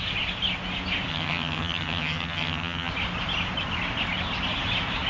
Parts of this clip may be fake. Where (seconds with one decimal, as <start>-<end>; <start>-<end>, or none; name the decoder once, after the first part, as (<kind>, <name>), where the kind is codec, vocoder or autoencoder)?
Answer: 1.1-2.9 (vocoder, HiFi-GAN)